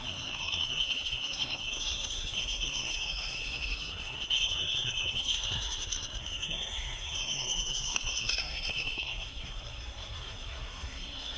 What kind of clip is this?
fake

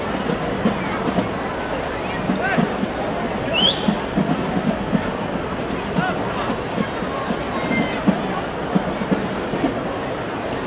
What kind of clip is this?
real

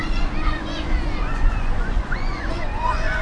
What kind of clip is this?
fake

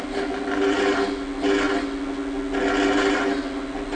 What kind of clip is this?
real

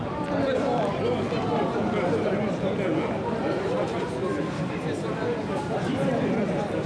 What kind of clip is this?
fake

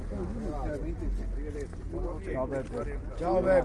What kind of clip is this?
real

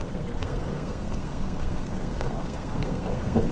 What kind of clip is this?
fake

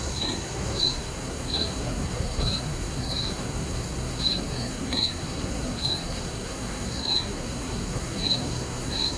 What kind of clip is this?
fake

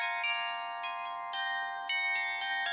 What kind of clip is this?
real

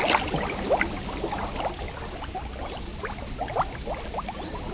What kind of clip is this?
real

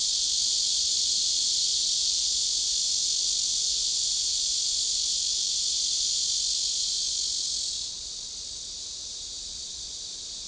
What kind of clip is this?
real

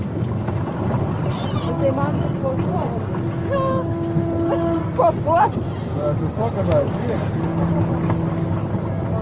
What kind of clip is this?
real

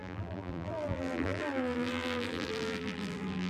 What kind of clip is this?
fake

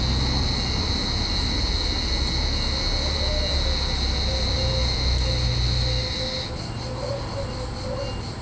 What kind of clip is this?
real